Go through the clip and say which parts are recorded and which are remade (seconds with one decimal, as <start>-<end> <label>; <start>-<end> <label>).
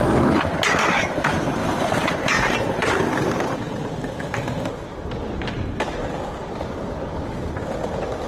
0.0-1.6 recorded; 1.6-3.9 remade; 3.9-8.3 recorded